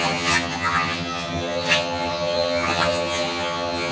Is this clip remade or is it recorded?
remade